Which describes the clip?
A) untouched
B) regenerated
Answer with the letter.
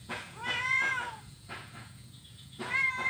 B